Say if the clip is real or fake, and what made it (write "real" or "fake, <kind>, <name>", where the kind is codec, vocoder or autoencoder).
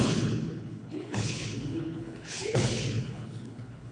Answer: fake, codec, HILCodec